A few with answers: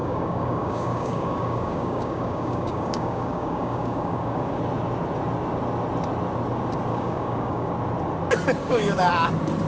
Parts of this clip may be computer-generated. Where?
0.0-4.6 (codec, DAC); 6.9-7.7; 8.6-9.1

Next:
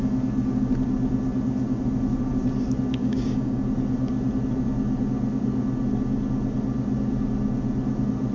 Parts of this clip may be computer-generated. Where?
3.0-3.6 (codec, DAC)

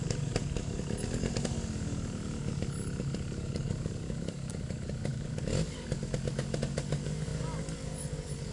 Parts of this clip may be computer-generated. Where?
0.0-8.5 (codec, DAC)